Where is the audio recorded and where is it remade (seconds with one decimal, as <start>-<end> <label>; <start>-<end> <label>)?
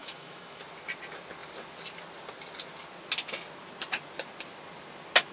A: 0.0-0.6 remade; 0.6-5.3 recorded